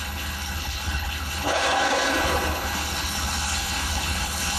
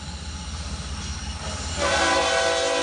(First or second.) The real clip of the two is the second